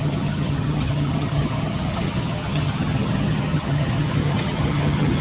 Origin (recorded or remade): remade